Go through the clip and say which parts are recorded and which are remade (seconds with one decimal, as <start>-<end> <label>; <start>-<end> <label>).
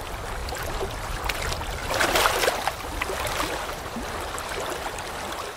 0.0-0.4 recorded; 0.4-1.2 remade; 1.2-1.8 recorded; 1.8-5.6 remade